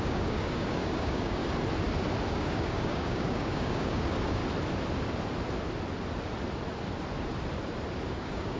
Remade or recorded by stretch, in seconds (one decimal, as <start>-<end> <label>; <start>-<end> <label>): 0.0-1.4 remade; 1.4-2.3 recorded; 2.3-4.4 remade; 4.4-8.1 recorded; 8.1-8.6 remade